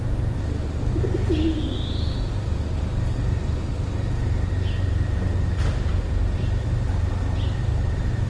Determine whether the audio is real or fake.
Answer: real